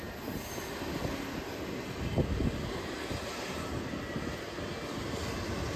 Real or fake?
real